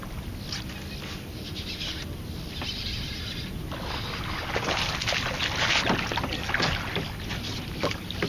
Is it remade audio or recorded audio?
recorded